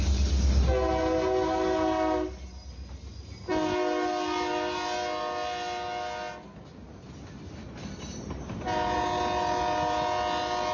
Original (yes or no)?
yes